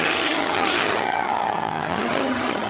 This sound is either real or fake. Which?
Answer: fake